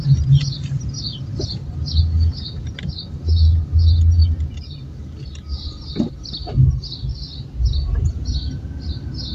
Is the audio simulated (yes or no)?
no